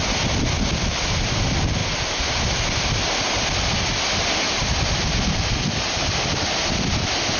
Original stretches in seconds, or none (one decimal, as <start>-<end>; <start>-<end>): 0.0-7.4